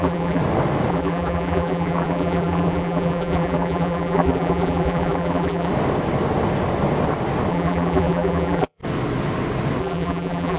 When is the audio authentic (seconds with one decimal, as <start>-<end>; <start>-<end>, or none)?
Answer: 0.4-0.9; 5.7-7.5; 8.8-9.8